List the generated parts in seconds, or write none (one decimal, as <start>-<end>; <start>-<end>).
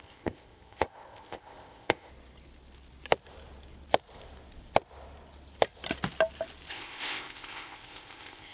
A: 0.0-2.1; 6.7-8.5